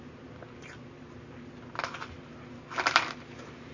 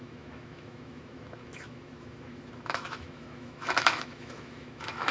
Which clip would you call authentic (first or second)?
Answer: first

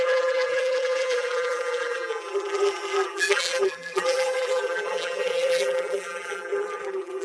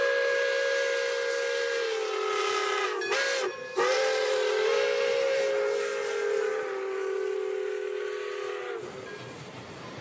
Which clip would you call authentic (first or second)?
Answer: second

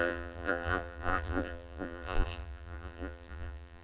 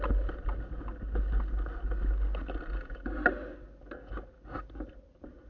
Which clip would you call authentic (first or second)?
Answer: second